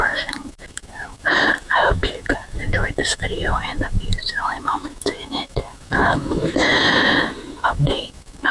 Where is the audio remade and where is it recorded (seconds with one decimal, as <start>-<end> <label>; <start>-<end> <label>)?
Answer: 0.0-8.5 remade